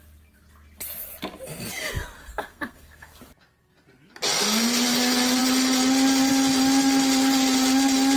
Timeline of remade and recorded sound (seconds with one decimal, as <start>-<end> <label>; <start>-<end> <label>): 0.0-2.3 recorded; 2.3-3.2 remade; 3.2-8.2 recorded